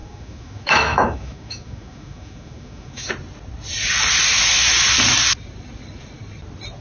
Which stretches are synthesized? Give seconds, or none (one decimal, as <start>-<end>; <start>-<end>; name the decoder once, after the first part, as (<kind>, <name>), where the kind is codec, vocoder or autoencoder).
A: 0.0-3.1 (autoencoder, DAC-VAE)